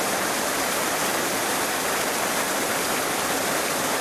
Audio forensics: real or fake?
real